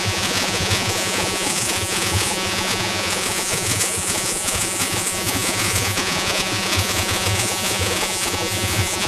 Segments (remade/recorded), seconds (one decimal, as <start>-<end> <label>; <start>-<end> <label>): 0.0-9.1 remade